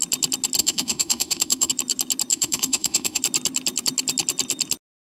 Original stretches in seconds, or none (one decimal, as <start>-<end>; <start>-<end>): 0.0-0.6; 1.7-2.3; 3.2-5.2